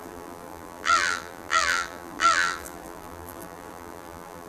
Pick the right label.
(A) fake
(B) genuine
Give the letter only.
A